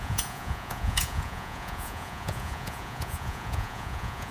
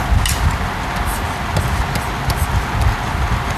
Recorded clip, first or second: second